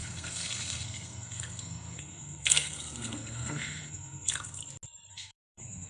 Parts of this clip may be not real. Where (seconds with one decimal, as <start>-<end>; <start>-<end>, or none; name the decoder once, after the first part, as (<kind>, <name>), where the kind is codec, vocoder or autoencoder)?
0.0-4.6 (codec, SNAC); 5.1-5.9